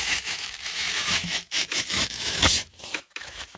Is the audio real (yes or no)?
no